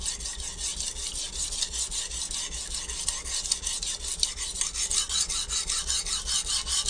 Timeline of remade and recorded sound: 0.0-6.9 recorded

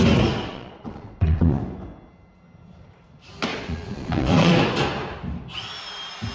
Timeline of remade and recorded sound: 0.0-0.5 recorded; 0.5-1.6 remade; 1.6-3.5 recorded; 3.5-4.5 remade; 4.5-6.3 recorded

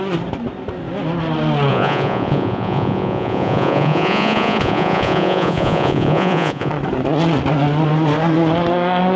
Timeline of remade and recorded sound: 0.0-1.7 recorded; 1.7-6.7 remade; 6.7-9.2 recorded

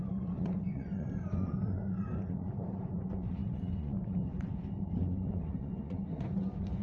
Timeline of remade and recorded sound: 0.0-6.8 remade

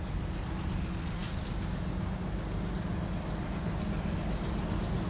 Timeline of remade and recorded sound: 0.0-5.1 recorded

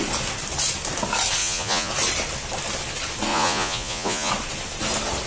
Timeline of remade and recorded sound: 0.0-1.4 recorded; 1.4-1.9 remade; 1.9-3.3 recorded; 3.3-4.3 remade; 4.3-5.3 recorded

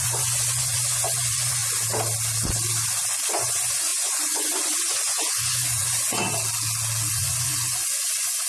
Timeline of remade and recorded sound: 0.0-1.6 remade; 1.6-3.3 recorded; 3.3-6.2 remade; 6.2-7.1 recorded; 7.1-8.5 remade